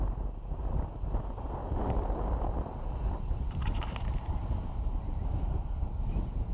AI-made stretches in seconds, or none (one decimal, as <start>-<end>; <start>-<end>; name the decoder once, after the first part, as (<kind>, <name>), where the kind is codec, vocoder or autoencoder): none